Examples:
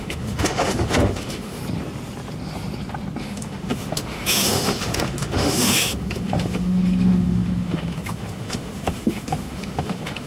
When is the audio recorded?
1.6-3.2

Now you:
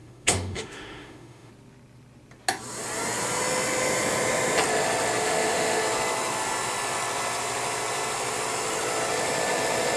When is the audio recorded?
1.5-5.2; 5.8-10.0

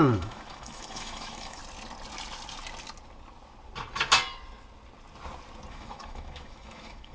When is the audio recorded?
1.6-5.7

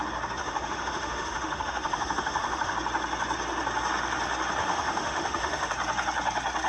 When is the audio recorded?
0.0-0.4; 2.7-4.6; 5.7-6.7